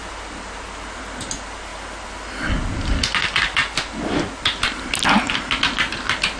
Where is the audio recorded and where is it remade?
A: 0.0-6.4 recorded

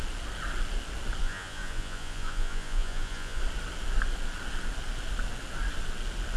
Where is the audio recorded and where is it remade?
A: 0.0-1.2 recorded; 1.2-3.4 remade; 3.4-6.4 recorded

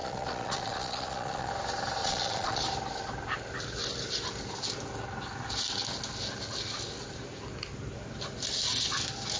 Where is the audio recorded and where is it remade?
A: 0.0-1.5 remade; 1.5-2.0 recorded; 2.0-2.6 remade; 2.6-9.4 recorded